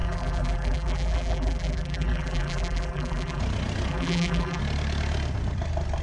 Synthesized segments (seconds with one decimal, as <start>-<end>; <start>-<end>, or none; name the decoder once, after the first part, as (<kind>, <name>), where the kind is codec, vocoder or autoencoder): 0.0-3.4 (vocoder, BigVGAN v2); 3.9-4.6

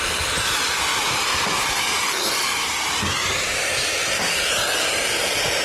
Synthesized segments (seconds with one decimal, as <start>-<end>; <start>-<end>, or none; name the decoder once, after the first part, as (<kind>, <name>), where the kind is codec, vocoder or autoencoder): 0.0-4.0 (vocoder, BigVGAN v2)

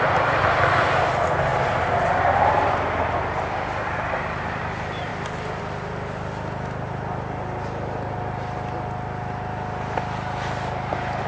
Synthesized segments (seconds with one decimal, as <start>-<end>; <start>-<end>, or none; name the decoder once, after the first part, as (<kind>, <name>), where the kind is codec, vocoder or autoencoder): none

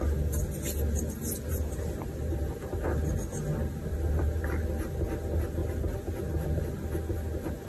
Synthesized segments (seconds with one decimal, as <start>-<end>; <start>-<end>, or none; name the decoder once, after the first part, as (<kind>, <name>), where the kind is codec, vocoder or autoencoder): 1.5-3.0 (vocoder, BigVGAN v2); 3.9-4.4

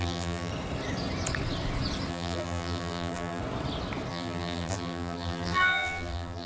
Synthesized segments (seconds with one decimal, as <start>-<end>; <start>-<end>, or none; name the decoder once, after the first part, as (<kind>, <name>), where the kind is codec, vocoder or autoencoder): 0.0-0.5 (vocoder, BigVGAN v2); 2.1-3.4; 4.1-6.5

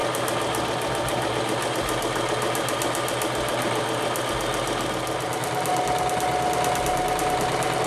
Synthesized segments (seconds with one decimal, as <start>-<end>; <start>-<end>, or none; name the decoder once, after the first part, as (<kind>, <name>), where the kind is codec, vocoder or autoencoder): none

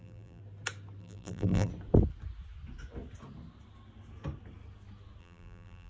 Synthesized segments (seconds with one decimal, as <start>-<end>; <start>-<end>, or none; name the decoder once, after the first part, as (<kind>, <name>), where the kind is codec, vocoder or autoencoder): 0.0-0.4 (vocoder, BigVGAN v2); 1.0-1.7; 5.2-5.9